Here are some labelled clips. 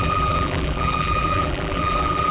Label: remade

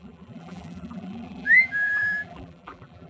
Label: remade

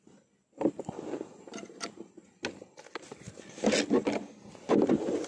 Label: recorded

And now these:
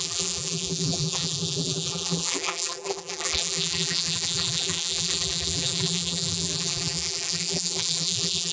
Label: remade